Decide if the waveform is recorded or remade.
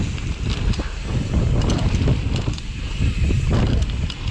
recorded